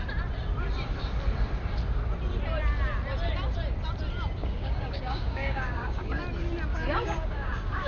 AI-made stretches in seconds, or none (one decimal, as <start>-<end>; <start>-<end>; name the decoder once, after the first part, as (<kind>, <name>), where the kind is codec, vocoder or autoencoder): 4.4-6.2 (codec, DAC); 6.7-7.9